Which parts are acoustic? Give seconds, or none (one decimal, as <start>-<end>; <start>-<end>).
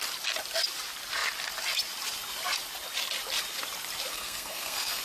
0.0-4.1